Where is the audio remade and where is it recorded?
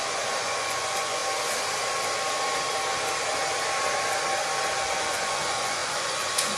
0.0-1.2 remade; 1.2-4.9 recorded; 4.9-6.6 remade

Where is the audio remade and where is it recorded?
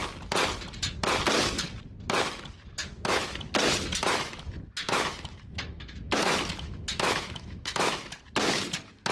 0.0-2.8 recorded; 2.8-3.4 remade; 3.4-4.0 recorded; 4.0-8.2 remade; 8.2-9.1 recorded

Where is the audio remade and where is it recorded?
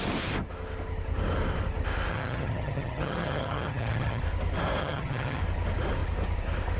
0.0-2.1 recorded; 2.1-4.2 remade; 4.2-4.8 recorded; 4.8-5.4 remade; 5.4-6.8 recorded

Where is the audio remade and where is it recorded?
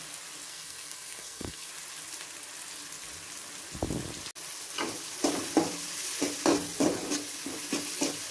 0.0-0.5 recorded; 0.5-1.7 remade; 1.7-8.3 recorded